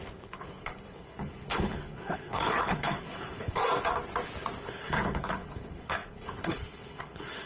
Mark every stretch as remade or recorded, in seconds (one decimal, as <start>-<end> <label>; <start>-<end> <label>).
0.0-3.6 remade; 3.6-4.8 recorded; 4.8-7.5 remade